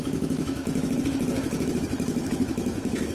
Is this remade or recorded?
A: remade